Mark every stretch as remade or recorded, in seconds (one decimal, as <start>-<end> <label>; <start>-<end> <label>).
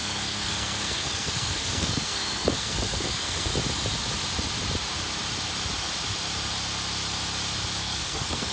0.0-3.5 remade; 3.5-7.8 recorded; 7.8-8.5 remade